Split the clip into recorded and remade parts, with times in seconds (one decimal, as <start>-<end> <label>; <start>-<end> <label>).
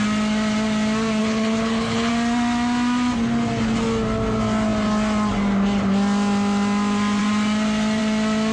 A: 0.0-1.2 recorded; 1.2-2.1 remade; 2.1-8.5 recorded